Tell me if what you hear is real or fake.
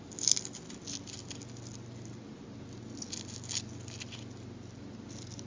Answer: real